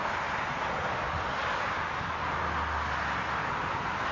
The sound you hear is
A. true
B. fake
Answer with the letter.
A